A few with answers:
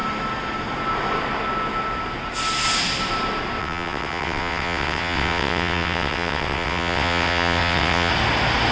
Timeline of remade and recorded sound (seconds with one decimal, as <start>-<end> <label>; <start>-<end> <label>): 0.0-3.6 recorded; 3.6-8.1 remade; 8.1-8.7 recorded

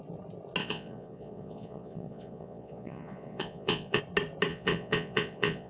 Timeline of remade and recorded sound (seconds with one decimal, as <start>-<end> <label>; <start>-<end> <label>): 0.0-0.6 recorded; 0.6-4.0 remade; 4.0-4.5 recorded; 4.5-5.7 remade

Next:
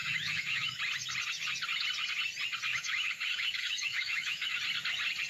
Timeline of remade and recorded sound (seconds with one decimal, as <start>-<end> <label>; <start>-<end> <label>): 0.0-0.8 remade; 0.8-2.7 recorded; 2.7-4.6 remade; 4.6-5.3 recorded

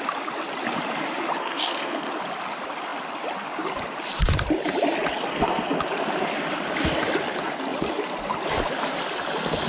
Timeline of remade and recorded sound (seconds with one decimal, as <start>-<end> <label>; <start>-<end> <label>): 0.0-1.4 recorded; 1.4-2.1 remade; 2.1-5.3 recorded; 5.3-5.8 remade; 5.8-9.7 recorded

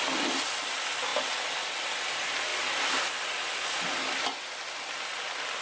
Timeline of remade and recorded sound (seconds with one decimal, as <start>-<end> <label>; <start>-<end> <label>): 0.0-2.5 recorded; 2.5-3.1 remade; 3.1-5.6 recorded